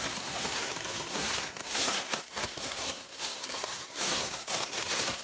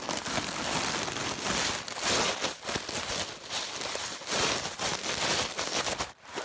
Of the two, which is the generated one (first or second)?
first